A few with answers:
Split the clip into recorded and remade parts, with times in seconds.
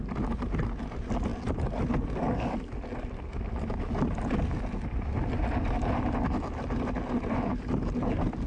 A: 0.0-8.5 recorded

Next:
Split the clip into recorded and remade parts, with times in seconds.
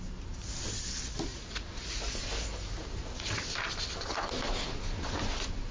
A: 0.0-1.3 recorded; 1.3-2.1 remade; 2.1-5.7 recorded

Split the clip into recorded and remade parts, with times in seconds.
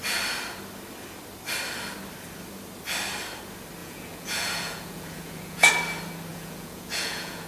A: 0.0-3.8 recorded; 3.8-5.7 remade; 5.7-6.3 recorded; 6.3-7.5 remade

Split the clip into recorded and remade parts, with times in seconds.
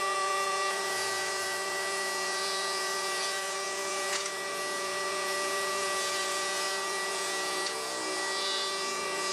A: 0.0-9.3 remade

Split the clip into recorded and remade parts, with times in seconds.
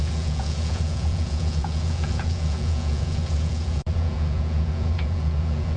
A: 0.0-5.8 remade